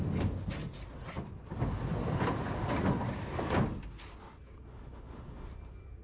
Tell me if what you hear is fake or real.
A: real